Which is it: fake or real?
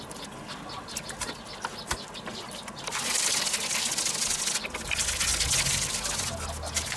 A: real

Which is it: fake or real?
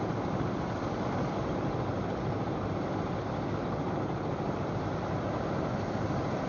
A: real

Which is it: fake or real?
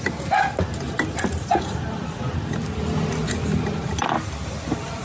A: real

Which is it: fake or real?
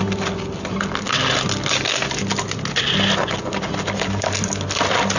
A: real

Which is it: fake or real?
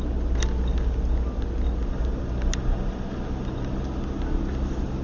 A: real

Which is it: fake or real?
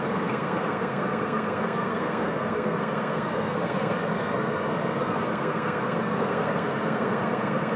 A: fake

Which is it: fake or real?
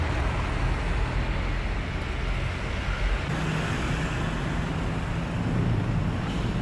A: real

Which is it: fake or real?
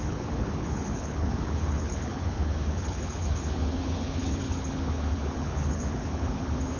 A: fake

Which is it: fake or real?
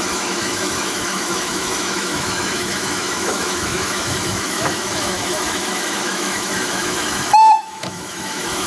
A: fake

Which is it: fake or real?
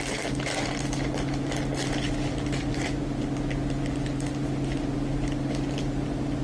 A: real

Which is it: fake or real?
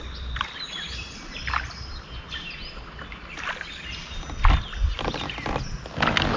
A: real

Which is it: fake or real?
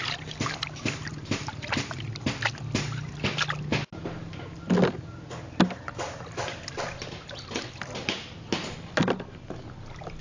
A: real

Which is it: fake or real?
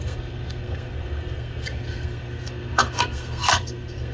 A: fake